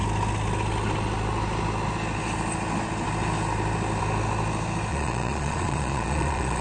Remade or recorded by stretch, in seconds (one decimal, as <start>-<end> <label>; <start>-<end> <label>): 0.0-4.9 recorded; 4.9-6.6 remade